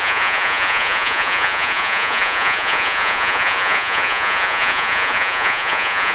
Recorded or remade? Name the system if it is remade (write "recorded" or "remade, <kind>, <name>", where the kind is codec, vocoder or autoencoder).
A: remade, vocoder, Vocos